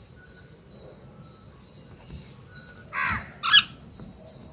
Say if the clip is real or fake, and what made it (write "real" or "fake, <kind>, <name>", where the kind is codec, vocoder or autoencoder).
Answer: real